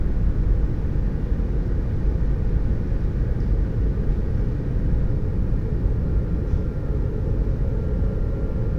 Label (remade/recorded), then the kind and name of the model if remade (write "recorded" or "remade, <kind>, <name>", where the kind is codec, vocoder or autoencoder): recorded